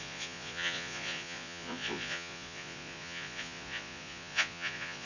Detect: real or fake fake